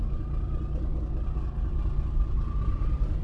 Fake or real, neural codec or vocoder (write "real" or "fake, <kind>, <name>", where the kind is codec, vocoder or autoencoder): fake, vocoder, BigVGAN v2